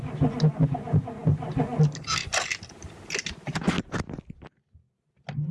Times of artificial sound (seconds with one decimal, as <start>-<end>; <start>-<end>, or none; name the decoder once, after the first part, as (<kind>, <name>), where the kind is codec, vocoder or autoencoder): none